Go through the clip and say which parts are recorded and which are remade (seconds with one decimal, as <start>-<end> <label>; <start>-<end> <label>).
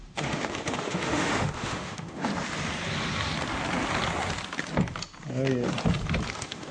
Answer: 0.0-2.3 remade; 2.3-6.3 recorded; 6.3-6.7 remade